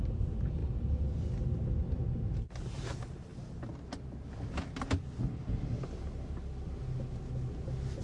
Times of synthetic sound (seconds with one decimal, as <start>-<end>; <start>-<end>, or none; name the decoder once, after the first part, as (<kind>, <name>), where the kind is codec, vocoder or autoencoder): none